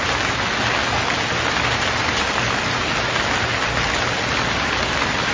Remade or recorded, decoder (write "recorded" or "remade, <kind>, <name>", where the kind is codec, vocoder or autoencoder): recorded